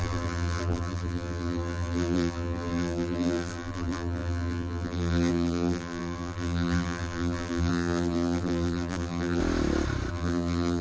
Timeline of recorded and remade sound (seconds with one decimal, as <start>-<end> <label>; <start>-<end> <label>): 0.0-9.4 remade; 9.4-10.1 recorded; 10.1-10.8 remade